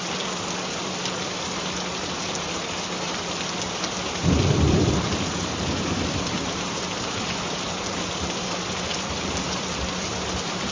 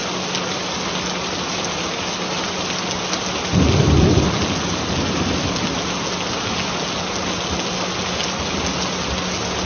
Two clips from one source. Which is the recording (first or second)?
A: second